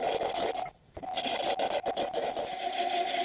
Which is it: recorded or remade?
recorded